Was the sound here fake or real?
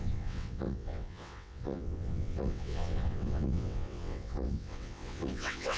fake